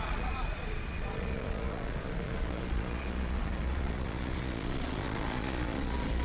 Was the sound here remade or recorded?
remade